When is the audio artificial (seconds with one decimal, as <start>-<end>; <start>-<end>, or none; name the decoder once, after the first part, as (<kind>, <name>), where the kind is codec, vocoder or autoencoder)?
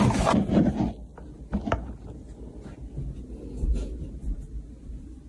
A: none